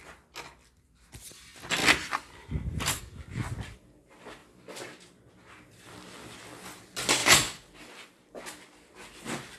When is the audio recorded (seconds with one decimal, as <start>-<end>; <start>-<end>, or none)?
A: 0.0-1.8; 3.0-7.2; 8.4-9.6